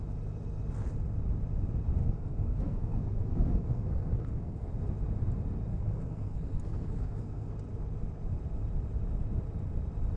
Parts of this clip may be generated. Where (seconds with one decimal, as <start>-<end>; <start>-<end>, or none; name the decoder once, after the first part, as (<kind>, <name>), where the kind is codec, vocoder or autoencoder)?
2.0-4.7 (codec, SNAC); 5.7-7.5